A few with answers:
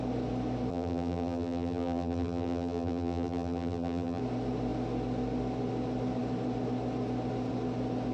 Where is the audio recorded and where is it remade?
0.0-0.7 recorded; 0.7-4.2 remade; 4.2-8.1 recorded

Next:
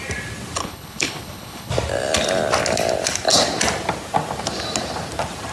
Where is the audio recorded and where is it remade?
0.0-0.6 recorded; 0.6-1.7 remade; 1.7-5.5 recorded

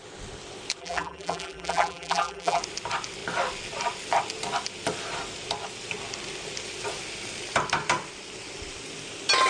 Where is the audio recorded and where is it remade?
0.0-0.8 recorded; 0.8-2.6 remade; 2.6-9.5 recorded

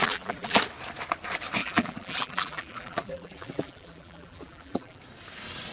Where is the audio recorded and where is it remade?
0.0-0.6 remade; 0.6-1.6 recorded; 1.6-5.0 remade; 5.0-5.7 recorded